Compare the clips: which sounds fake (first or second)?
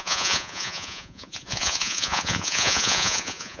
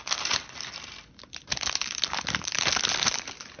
first